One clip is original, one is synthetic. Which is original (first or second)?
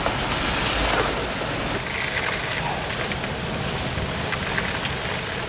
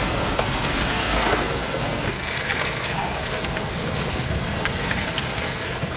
first